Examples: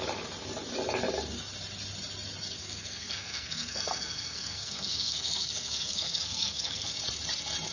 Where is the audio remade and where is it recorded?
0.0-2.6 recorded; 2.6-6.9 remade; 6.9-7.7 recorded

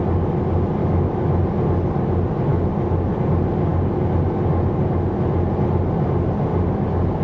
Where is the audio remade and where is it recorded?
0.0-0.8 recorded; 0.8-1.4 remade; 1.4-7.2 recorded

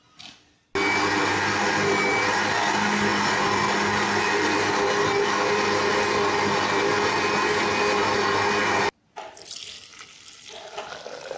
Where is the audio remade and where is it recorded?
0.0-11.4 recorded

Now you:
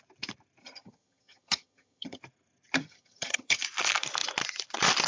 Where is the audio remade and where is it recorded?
0.0-0.6 recorded; 0.6-2.2 remade; 2.2-2.8 recorded; 2.8-3.6 remade; 3.6-5.1 recorded